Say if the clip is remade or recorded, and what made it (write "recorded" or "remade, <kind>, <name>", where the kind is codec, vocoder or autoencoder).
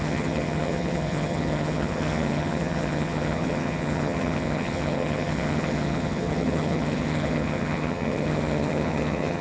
remade, vocoder, HiFi-GAN